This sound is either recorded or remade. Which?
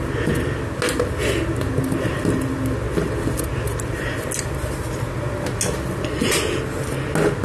recorded